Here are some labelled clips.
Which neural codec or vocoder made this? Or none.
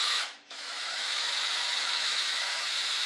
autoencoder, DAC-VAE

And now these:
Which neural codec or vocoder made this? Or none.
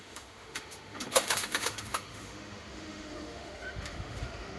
autoencoder, DAC-VAE